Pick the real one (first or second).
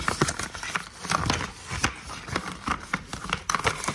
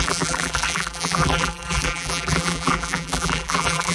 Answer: first